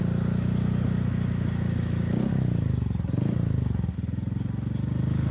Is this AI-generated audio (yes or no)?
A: no